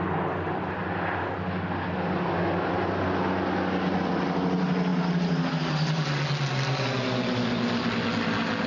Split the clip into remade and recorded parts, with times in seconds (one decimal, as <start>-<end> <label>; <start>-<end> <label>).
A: 0.0-8.7 recorded